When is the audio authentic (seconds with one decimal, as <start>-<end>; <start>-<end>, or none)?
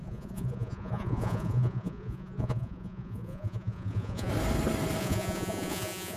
4.3-5.0